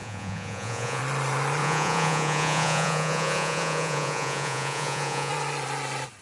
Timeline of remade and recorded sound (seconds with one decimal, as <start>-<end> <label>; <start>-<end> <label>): 0.0-1.0 remade; 1.0-1.6 recorded; 1.6-5.3 remade; 5.3-6.2 recorded